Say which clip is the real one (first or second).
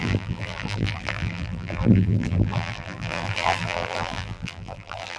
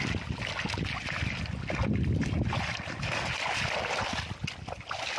second